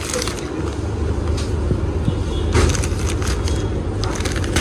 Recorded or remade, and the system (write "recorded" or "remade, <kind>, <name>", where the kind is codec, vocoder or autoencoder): recorded